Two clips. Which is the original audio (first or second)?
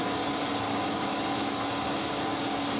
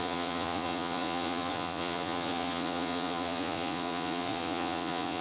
first